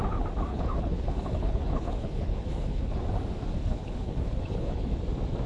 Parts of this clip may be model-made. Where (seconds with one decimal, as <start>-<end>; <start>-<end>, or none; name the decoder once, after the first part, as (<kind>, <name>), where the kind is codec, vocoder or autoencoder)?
0.5-3.0 (codec, HILCodec); 3.6-5.0